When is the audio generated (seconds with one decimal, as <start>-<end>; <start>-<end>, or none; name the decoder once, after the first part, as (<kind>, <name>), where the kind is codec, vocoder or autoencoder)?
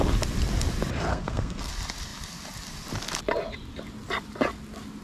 1.1-1.7 (codec, SNAC)